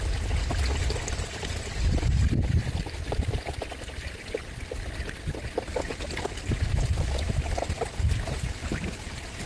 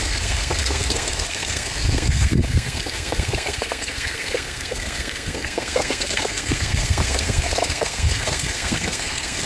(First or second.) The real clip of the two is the first